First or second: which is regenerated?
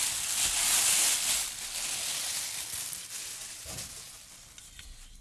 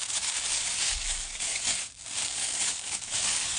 second